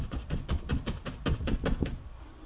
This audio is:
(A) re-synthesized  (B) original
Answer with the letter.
B